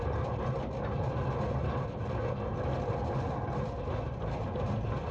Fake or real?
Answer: real